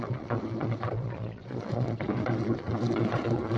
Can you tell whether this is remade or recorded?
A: remade